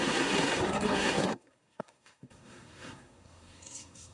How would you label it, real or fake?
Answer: fake